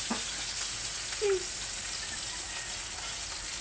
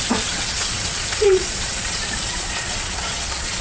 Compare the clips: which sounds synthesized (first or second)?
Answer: second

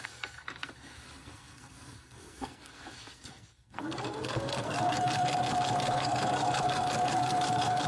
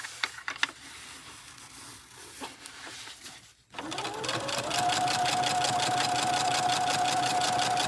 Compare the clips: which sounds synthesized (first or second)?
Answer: first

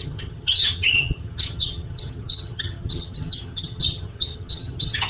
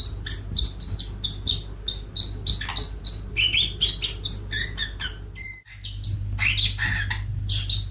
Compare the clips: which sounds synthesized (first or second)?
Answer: first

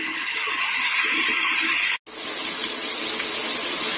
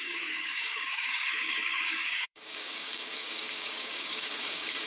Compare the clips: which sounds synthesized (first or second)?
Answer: second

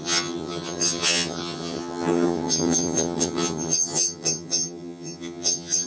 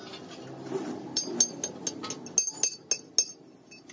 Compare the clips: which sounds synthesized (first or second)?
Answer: first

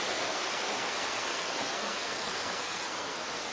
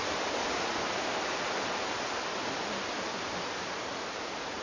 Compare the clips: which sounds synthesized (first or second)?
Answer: first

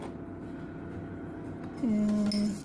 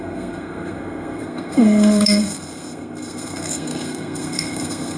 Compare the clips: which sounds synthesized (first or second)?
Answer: second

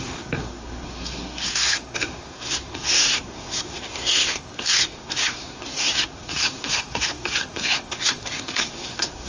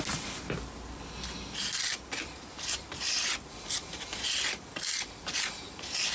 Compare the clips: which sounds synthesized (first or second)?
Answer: first